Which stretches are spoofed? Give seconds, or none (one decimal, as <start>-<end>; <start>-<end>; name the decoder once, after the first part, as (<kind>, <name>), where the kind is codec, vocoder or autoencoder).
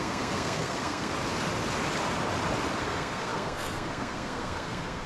0.0-1.1 (codec, SNAC); 2.8-5.1